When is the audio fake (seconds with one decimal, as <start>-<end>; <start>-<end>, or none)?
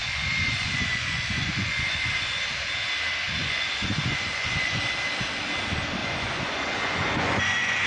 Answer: 0.0-2.4; 3.4-4.9; 6.0-7.9